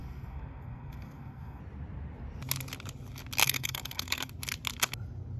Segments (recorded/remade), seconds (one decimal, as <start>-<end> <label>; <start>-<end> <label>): 0.0-1.6 remade; 1.6-3.4 recorded; 3.4-4.3 remade; 4.3-5.4 recorded